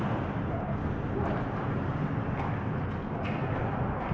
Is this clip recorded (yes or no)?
yes